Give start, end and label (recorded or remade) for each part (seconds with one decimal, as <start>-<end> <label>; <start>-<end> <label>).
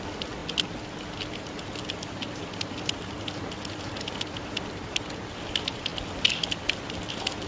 0.0-7.5 recorded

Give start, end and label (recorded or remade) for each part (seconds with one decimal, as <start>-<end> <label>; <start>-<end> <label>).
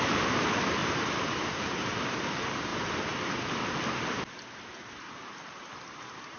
0.0-2.7 remade; 2.7-5.1 recorded; 5.1-6.4 remade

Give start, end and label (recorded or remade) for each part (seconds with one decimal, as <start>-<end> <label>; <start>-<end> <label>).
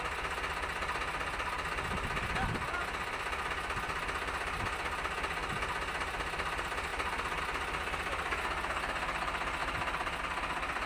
0.0-2.8 recorded; 2.8-3.5 remade; 3.5-6.9 recorded; 6.9-7.4 remade; 7.4-9.6 recorded; 9.6-10.2 remade; 10.2-10.9 recorded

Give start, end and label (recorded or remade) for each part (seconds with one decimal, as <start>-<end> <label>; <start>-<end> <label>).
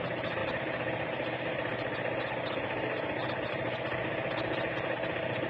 0.0-5.5 recorded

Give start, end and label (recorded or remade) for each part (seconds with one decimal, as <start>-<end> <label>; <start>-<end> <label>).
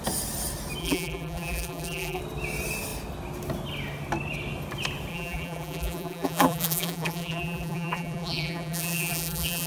0.0-0.8 recorded; 0.8-2.2 remade; 2.2-5.1 recorded; 5.1-9.7 remade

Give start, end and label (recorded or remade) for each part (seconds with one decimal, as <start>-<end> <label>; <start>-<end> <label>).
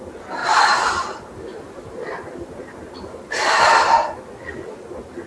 0.0-0.4 recorded; 0.4-3.6 remade; 3.6-5.3 recorded